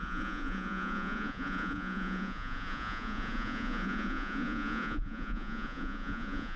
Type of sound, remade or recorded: remade